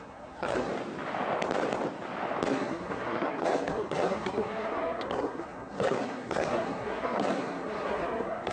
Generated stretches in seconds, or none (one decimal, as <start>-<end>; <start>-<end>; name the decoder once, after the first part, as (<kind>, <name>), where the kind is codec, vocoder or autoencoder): 0.0-0.7 (codec, SNAC); 2.5-8.5